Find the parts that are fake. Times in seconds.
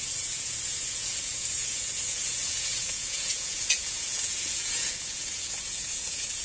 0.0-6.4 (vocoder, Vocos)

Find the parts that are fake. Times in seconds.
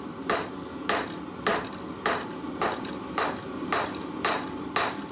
none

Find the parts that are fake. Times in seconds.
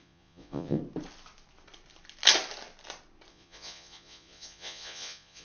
0.0-0.8 (vocoder, Vocos); 3.3-5.4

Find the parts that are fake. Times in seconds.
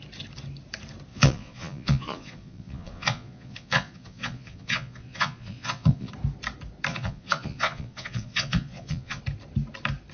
1.1-6.1 (vocoder, Vocos); 6.9-9.2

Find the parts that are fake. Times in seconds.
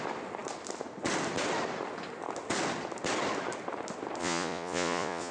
4.2-5.3 (vocoder, Vocos)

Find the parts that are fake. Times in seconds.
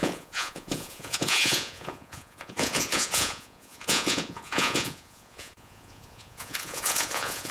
0.0-7.5 (vocoder, Vocos)